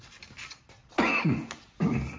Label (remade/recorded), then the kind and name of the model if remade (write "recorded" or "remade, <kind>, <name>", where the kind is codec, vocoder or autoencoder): recorded